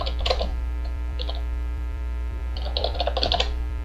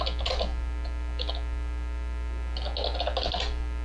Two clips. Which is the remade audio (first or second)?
first